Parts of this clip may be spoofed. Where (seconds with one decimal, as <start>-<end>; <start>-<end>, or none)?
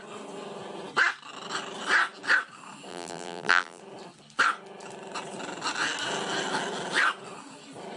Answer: 2.9-3.8